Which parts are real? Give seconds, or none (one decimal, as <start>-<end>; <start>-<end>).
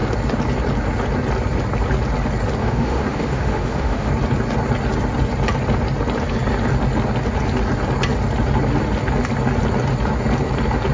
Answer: 0.0-2.6; 4.1-10.9